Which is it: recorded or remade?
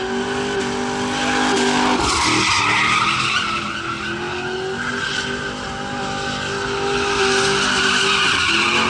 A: recorded